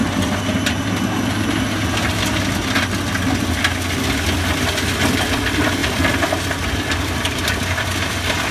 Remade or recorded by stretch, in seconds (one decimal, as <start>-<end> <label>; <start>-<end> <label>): 0.0-5.1 recorded; 5.1-5.8 remade; 5.8-6.5 recorded; 6.5-8.5 remade